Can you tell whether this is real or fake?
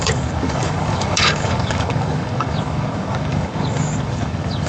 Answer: fake